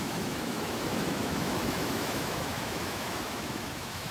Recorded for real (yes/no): no